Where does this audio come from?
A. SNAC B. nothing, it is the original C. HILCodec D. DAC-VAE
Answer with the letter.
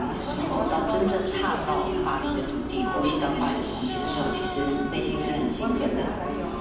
B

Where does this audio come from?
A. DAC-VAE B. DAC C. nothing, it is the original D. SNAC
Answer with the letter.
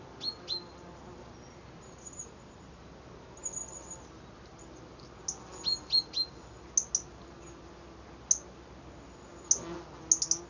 C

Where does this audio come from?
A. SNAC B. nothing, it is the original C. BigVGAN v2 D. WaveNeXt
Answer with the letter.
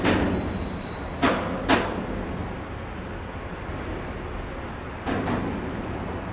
B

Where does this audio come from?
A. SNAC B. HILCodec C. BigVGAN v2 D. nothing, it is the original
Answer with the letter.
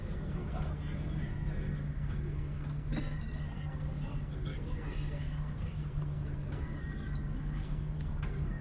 A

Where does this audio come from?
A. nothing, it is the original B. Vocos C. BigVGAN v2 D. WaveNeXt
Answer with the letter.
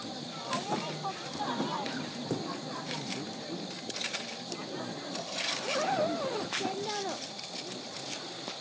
A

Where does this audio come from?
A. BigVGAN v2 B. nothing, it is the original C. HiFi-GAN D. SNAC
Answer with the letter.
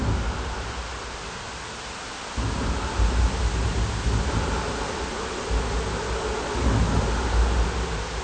B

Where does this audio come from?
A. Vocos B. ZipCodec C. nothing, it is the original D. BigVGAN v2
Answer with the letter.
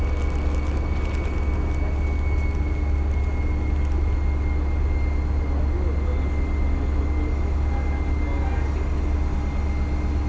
C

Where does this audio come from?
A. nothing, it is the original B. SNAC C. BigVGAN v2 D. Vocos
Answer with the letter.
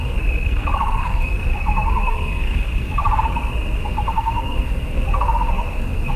B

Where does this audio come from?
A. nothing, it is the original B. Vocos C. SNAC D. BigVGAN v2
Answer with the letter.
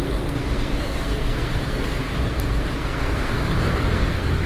C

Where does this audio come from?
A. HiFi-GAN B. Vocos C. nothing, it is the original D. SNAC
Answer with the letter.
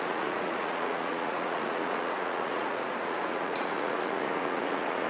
B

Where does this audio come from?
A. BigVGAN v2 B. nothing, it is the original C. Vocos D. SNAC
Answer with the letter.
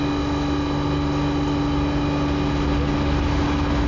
B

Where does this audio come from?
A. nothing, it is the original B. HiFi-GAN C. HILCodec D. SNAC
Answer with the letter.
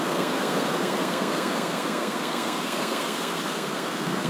D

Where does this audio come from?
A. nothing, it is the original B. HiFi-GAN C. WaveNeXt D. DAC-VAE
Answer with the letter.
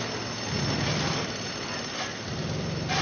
A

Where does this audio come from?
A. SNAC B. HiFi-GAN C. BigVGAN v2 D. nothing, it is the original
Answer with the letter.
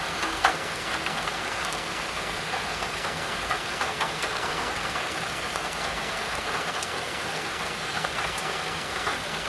A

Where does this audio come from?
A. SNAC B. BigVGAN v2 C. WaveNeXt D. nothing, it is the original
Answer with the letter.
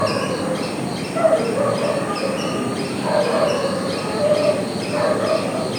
B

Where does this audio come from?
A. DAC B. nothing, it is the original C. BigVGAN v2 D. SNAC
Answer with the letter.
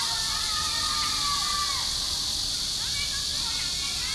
B